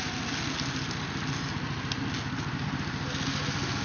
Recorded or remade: recorded